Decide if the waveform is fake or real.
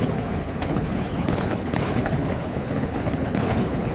fake